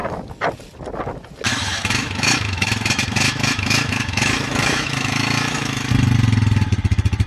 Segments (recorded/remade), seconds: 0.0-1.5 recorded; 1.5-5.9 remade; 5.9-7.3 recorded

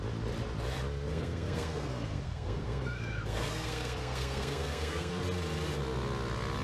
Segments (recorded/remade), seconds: 0.0-1.1 recorded; 1.1-5.1 remade; 5.1-6.6 recorded

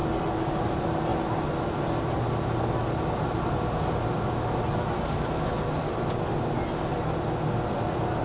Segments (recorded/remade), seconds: 0.0-8.2 recorded

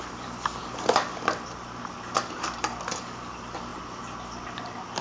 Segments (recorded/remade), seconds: 0.0-5.0 recorded